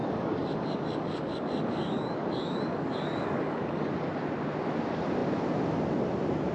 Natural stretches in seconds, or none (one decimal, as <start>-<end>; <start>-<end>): 3.9-6.5